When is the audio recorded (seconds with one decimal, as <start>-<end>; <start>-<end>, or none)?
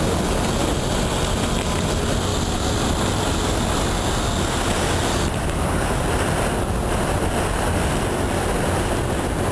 0.0-9.5